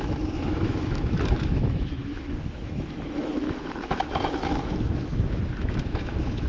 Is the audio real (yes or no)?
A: no